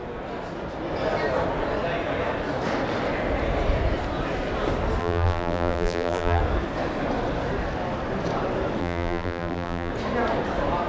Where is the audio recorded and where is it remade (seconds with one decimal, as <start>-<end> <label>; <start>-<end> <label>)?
0.0-5.0 recorded; 5.0-6.4 remade; 6.4-8.8 recorded; 8.8-9.9 remade; 9.9-10.9 recorded